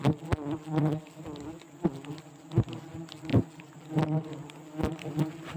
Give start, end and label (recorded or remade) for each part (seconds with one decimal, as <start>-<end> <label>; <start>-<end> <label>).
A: 0.0-3.3 recorded; 3.3-3.9 remade; 3.9-5.6 recorded